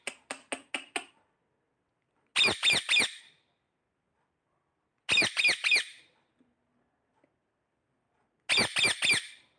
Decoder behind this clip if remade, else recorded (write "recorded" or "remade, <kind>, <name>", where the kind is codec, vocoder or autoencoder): recorded